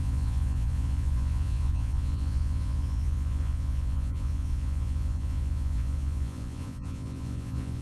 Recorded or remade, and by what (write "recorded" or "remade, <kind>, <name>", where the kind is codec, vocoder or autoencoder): remade, vocoder, Vocos